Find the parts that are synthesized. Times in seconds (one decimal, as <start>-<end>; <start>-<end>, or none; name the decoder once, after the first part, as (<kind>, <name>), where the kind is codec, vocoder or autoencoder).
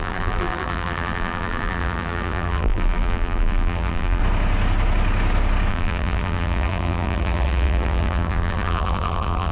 0.0-4.2 (vocoder, BigVGAN v2); 5.7-9.5